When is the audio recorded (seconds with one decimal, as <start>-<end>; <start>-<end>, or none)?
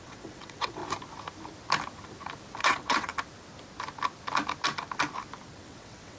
0.8-2.6; 3.1-5.5